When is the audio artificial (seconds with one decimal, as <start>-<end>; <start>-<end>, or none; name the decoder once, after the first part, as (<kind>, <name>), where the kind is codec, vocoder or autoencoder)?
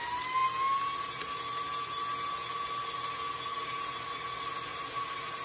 3.5-4.2 (vocoder, BigVGAN v2); 4.7-5.4